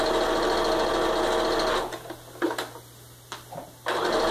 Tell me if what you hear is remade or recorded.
recorded